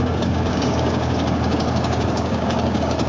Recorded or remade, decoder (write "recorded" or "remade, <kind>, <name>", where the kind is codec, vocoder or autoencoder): remade, codec, DAC